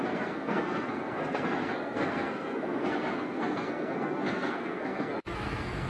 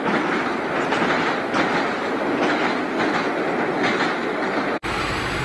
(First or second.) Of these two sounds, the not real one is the first